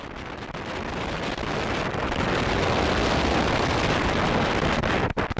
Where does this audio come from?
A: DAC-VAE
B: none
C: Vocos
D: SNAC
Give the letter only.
B